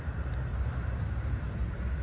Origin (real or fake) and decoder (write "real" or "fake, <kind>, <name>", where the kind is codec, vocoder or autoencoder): real